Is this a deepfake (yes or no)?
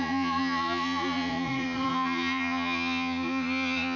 yes